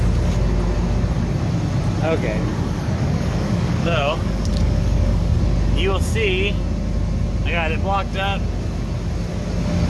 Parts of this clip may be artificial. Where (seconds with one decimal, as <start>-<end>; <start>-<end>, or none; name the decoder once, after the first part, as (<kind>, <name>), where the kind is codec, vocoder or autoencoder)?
2.5-5.4 (codec, DAC)